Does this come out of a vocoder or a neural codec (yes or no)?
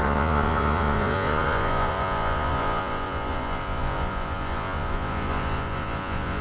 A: yes